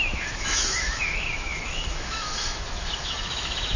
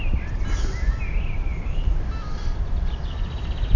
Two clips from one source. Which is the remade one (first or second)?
first